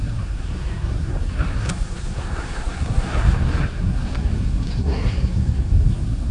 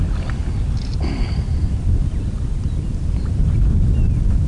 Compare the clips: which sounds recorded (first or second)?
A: second